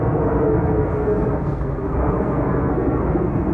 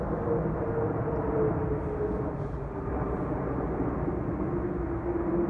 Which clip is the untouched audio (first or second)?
second